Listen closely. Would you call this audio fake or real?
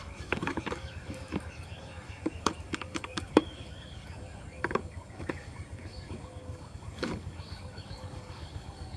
fake